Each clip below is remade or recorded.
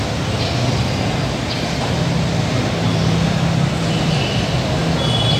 recorded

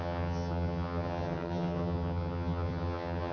remade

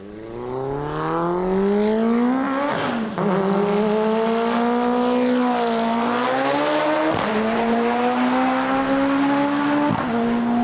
recorded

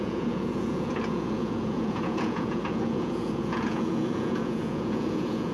remade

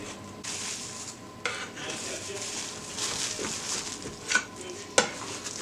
recorded